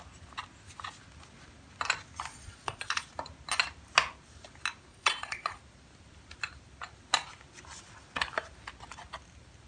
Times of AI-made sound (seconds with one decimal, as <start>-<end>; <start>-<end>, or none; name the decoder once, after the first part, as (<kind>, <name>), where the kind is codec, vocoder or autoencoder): 2.3-3.0 (vocoder, Vocos); 4.9-5.6